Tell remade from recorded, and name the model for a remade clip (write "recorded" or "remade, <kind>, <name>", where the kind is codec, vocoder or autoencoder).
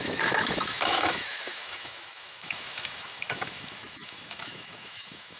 remade, autoencoder, DAC-VAE